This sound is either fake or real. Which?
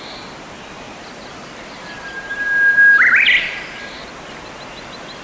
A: real